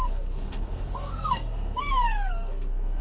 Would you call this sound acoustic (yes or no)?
no